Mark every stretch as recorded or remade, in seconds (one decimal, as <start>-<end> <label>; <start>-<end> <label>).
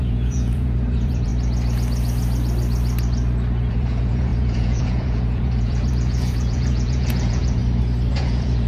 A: 0.0-1.3 remade; 1.3-3.7 recorded; 3.7-7.6 remade; 7.6-8.1 recorded; 8.1-8.7 remade